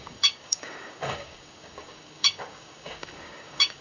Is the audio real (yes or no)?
no